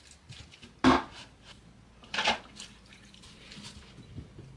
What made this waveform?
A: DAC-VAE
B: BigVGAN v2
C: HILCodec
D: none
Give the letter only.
D